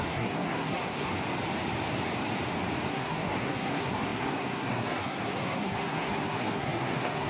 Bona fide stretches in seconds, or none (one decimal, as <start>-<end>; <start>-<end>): 1.1-2.9